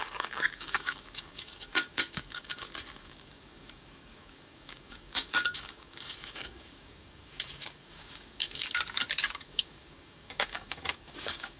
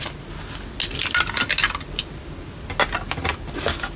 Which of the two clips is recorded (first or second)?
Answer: second